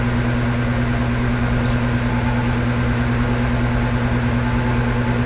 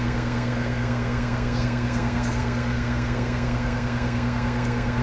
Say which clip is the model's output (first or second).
second